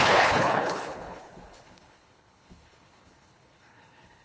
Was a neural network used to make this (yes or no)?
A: yes